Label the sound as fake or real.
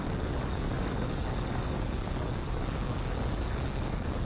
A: fake